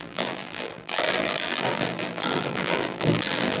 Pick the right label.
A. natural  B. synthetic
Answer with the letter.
B